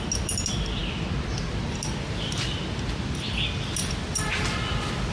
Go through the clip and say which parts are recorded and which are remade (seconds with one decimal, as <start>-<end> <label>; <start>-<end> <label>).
0.0-5.1 recorded